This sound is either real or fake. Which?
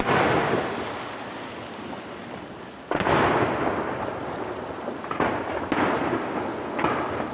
real